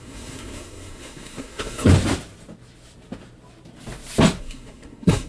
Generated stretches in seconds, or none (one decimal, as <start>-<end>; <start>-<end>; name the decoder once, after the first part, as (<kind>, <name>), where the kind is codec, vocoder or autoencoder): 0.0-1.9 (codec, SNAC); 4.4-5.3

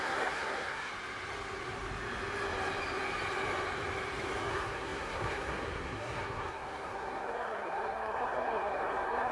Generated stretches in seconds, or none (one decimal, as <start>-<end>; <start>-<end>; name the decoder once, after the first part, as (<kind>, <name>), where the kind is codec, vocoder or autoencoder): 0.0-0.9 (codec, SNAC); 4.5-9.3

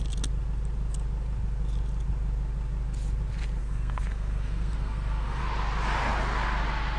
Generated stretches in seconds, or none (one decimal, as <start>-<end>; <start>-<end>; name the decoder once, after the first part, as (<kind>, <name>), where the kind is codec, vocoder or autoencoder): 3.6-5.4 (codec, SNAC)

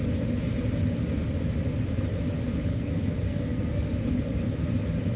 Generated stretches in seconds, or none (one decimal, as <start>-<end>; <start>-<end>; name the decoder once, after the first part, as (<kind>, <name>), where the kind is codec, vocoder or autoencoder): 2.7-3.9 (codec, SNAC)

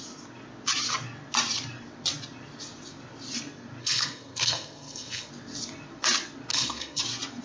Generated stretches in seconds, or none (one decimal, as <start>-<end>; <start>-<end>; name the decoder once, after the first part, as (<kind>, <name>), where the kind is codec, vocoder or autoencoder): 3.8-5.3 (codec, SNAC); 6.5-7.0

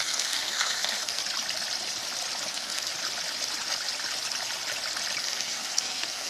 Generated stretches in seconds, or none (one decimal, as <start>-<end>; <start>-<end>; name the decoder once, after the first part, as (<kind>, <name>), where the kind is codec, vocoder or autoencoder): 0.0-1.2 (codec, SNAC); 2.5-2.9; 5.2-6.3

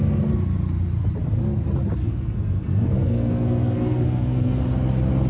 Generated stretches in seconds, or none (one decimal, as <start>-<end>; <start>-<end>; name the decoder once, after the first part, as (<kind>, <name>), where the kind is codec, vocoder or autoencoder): 2.0-4.6 (codec, SNAC)

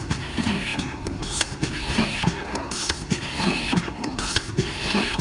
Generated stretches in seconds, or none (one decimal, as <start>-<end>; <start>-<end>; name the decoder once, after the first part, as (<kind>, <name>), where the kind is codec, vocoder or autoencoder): 0.0-5.2 (codec, SNAC)